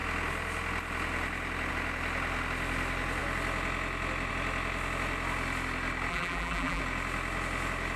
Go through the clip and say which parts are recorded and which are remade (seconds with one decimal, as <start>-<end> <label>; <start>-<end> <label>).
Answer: 0.0-6.1 recorded; 6.1-6.8 remade; 6.8-8.0 recorded